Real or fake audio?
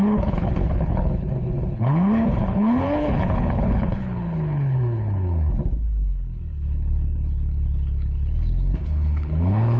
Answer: fake